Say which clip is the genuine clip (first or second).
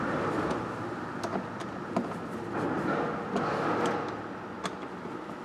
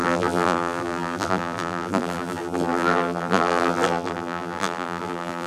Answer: first